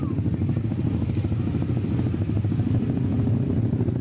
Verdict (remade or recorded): remade